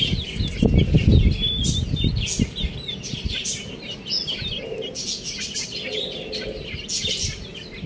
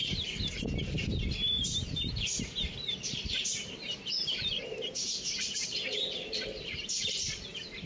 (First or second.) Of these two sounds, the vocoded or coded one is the second